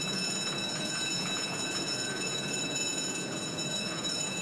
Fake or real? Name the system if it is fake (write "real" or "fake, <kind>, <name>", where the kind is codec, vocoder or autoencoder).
fake, vocoder, Vocos